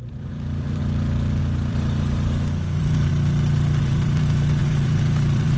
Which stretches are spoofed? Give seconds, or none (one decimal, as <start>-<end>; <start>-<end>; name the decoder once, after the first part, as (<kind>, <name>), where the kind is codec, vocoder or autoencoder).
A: 0.0-0.8 (vocoder, BigVGAN v2); 1.4-3.1; 3.8-5.6